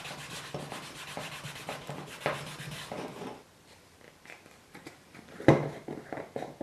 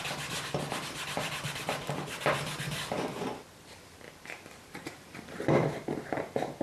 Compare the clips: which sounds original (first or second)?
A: first